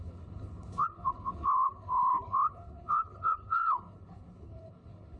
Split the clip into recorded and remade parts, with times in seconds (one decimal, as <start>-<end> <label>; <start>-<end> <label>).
0.0-5.2 remade